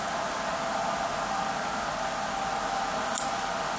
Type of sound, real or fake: real